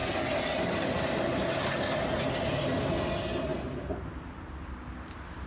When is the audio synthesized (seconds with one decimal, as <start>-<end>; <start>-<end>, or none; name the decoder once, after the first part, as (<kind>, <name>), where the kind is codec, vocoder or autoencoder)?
none